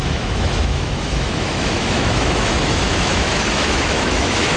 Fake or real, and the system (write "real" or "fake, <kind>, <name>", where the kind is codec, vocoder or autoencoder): fake, autoencoder, DAC-VAE